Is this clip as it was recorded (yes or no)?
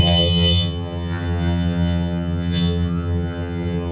no